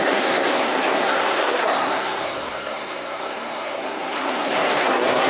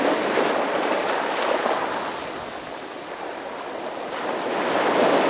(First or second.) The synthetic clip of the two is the first